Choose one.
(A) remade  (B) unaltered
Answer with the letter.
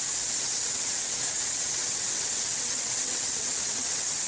A